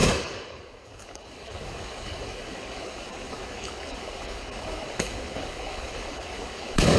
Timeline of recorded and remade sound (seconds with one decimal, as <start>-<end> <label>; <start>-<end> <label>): 0.0-7.0 remade